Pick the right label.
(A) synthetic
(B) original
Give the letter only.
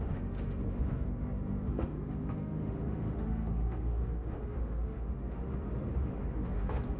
A